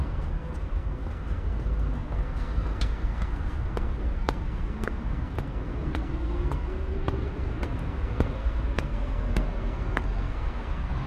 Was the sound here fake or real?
fake